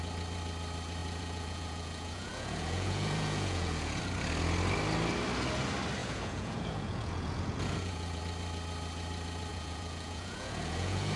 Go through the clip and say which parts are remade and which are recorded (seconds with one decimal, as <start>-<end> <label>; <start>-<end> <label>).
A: 0.0-1.0 recorded; 1.0-4.0 remade; 4.0-6.0 recorded; 6.0-8.2 remade; 8.2-9.5 recorded; 9.5-11.2 remade